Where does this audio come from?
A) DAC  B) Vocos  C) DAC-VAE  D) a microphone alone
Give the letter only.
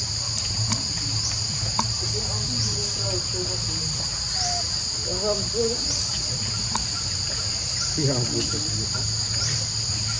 D